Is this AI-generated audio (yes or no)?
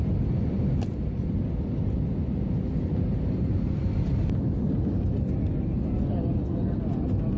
no